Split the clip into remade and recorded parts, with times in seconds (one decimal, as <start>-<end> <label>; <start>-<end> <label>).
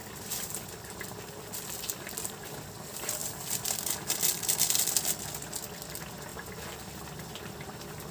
0.0-2.3 remade; 2.3-3.2 recorded; 3.2-4.7 remade; 4.7-6.3 recorded; 6.3-7.3 remade; 7.3-8.1 recorded